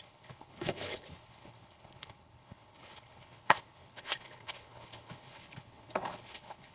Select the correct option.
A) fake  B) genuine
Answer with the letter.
A